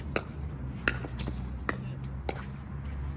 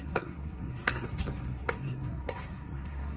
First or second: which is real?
first